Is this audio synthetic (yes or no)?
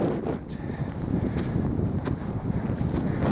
no